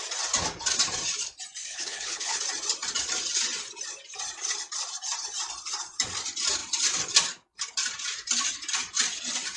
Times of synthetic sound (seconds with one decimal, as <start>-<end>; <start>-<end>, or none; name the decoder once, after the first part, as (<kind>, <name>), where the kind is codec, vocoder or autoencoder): 1.6-2.4 (codec, HILCodec)